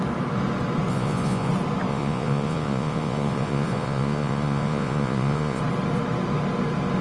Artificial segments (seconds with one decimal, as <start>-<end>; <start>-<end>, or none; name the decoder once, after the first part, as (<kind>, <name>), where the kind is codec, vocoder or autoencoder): 0.9-1.5 (vocoder, Vocos); 1.9-5.6